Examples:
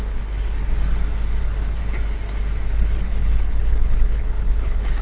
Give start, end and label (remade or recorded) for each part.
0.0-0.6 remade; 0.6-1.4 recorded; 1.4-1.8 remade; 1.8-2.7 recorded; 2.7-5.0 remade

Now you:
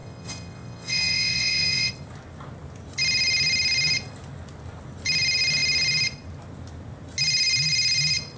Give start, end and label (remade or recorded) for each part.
0.0-1.9 remade; 1.9-8.4 recorded

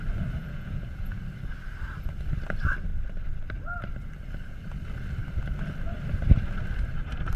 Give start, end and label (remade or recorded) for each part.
0.0-0.4 recorded; 0.4-1.2 remade; 1.2-7.4 recorded

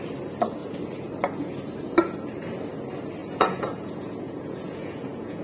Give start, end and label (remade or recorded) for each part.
0.0-3.2 recorded; 3.2-5.4 remade

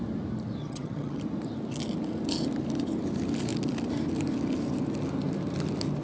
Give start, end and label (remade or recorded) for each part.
0.0-0.6 recorded; 0.6-1.2 remade; 1.2-6.0 recorded